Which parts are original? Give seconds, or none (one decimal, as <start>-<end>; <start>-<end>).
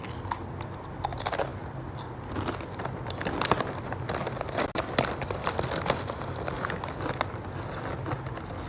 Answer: 0.0-8.7